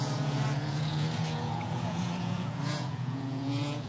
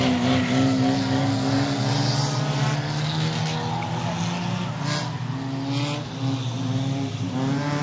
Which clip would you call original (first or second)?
second